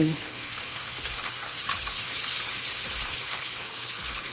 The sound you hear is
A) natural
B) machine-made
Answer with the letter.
B